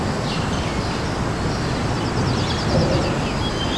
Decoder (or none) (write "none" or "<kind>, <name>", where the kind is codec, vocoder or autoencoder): none